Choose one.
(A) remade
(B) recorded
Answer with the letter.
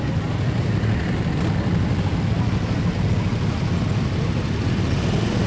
B